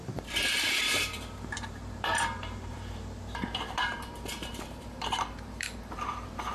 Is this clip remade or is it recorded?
remade